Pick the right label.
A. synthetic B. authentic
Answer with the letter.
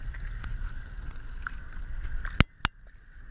B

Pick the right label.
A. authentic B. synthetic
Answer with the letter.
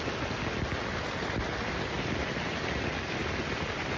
A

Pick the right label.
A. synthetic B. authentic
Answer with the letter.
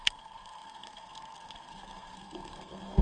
A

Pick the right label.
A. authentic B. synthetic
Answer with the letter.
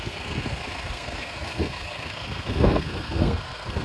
B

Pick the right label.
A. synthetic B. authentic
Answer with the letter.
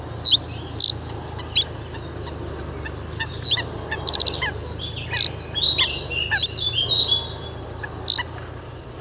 B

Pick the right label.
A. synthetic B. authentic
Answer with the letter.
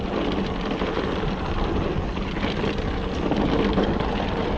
B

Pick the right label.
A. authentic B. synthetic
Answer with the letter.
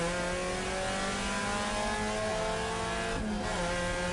A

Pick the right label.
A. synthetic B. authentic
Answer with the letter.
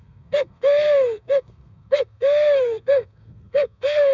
A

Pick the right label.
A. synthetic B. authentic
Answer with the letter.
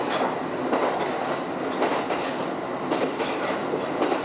B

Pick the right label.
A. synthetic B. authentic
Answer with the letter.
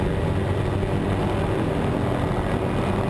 B